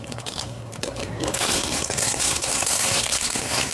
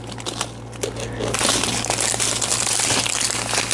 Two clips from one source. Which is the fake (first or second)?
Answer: first